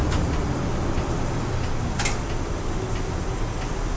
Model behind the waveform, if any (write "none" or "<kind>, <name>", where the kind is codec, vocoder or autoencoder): none